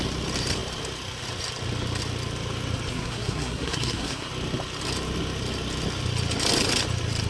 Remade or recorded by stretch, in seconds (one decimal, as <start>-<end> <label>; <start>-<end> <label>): 0.0-2.9 recorded; 2.9-4.3 remade; 4.3-7.3 recorded